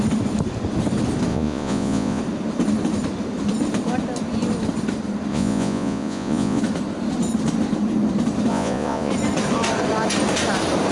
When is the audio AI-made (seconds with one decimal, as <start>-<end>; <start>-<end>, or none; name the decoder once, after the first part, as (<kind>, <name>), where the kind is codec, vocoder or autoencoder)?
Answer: 1.3-2.2 (vocoder, Vocos); 5.3-6.6; 8.5-9.1